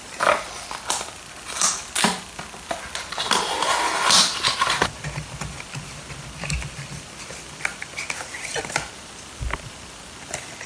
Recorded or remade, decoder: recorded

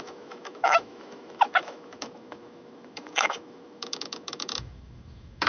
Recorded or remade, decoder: remade, autoencoder, DAC-VAE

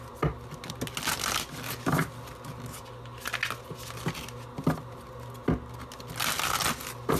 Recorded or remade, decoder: recorded